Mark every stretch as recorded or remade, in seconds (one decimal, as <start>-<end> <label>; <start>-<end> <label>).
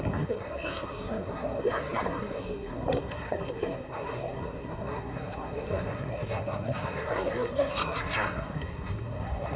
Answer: 0.0-9.6 remade